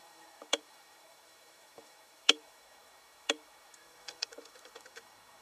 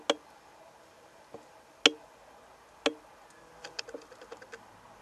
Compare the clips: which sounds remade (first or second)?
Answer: first